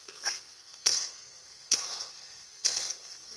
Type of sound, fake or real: fake